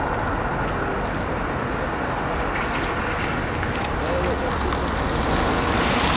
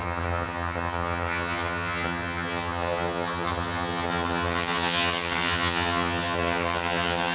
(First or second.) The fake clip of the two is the second